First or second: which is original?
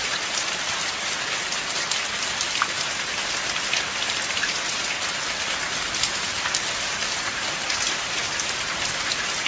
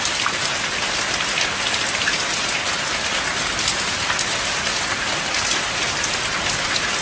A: second